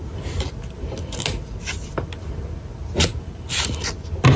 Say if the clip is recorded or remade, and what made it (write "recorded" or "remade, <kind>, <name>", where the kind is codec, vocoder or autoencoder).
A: recorded